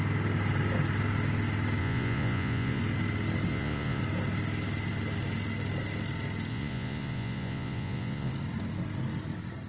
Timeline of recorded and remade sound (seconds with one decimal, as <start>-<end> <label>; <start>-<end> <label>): 0.0-1.8 recorded; 1.8-2.8 remade; 2.8-3.5 recorded; 3.5-4.0 remade; 4.0-6.5 recorded; 6.5-8.3 remade; 8.3-9.7 recorded